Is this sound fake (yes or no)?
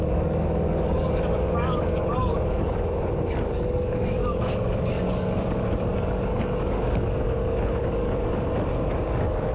yes